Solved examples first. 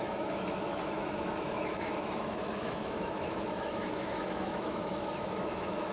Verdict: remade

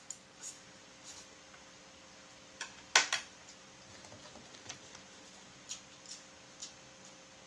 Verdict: recorded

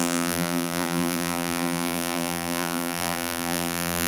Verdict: remade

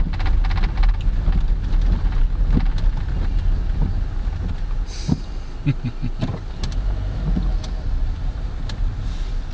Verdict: recorded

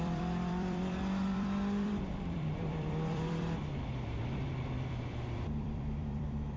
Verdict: remade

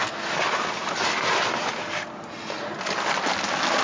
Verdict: recorded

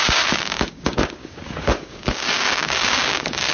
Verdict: remade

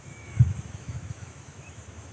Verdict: remade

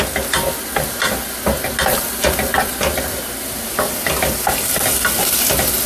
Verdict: recorded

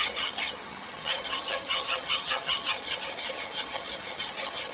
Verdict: remade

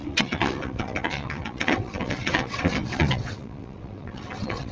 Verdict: remade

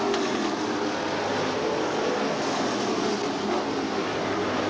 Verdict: recorded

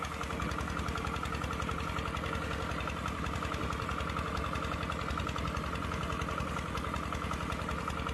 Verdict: recorded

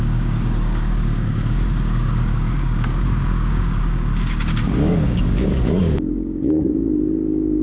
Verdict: remade